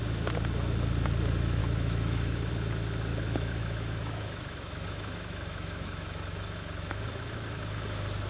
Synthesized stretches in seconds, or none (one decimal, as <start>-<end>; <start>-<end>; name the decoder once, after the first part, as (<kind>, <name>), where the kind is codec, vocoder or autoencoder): 1.6-2.5 (autoencoder, DAC-VAE); 3.1-7.7